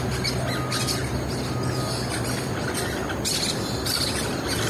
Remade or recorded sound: recorded